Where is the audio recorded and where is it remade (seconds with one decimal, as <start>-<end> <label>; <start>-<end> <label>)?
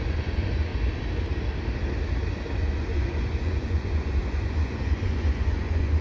0.0-0.7 remade; 0.7-2.6 recorded; 2.6-6.0 remade